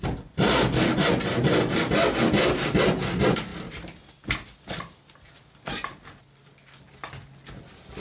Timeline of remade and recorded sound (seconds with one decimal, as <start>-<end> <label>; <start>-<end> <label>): 0.0-8.0 recorded